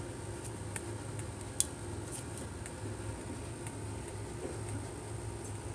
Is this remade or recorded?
recorded